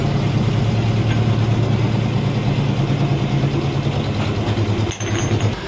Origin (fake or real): real